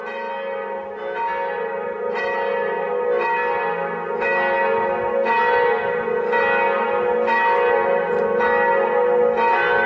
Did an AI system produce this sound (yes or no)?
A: no